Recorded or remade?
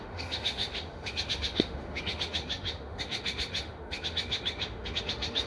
remade